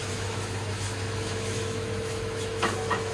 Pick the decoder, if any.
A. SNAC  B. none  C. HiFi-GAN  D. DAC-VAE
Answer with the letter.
D